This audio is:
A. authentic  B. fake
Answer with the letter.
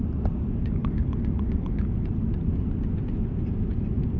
A